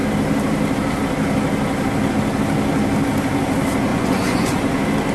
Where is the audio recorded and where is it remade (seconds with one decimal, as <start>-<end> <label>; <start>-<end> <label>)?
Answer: 0.0-3.9 recorded; 3.9-4.6 remade; 4.6-5.1 recorded